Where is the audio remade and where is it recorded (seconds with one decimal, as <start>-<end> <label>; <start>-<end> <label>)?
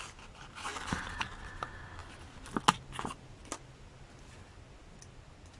0.0-5.6 recorded